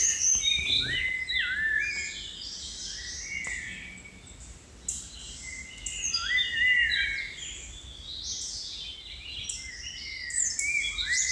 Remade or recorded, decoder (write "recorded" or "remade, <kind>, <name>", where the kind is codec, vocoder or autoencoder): recorded